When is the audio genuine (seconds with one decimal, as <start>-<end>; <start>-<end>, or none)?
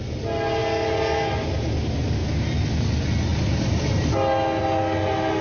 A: 0.0-5.4